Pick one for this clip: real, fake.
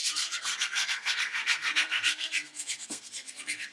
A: fake